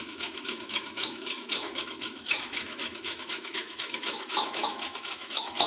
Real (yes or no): no